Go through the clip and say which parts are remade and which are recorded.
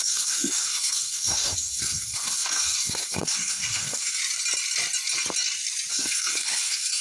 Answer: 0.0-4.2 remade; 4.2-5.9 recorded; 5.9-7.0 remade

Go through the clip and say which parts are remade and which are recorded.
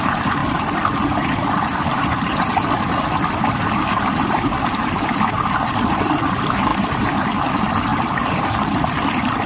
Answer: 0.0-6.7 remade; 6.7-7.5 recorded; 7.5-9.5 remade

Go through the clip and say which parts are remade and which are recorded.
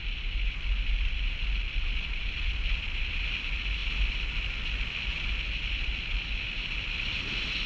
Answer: 0.0-7.7 recorded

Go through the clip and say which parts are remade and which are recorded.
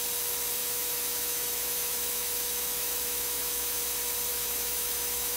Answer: 0.0-0.6 recorded; 0.6-3.8 remade; 3.8-4.3 recorded; 4.3-5.4 remade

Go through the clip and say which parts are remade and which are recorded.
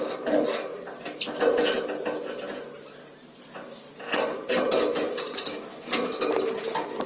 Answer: 0.0-7.1 recorded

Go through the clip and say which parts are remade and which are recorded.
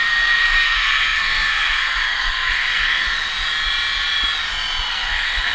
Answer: 0.0-3.3 remade; 3.3-4.9 recorded; 4.9-5.5 remade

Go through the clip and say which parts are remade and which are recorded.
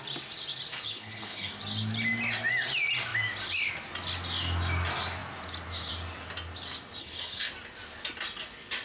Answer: 0.0-0.7 recorded; 0.7-1.5 remade; 1.5-7.0 recorded; 7.0-7.5 remade; 7.5-8.8 recorded